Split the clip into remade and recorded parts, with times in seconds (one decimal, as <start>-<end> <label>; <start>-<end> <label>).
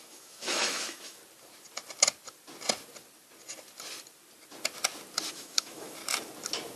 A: 0.0-1.2 remade; 1.2-5.3 recorded; 5.3-6.0 remade; 6.0-6.8 recorded